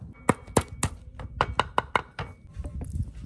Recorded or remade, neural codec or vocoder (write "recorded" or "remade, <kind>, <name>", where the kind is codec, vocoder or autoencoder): recorded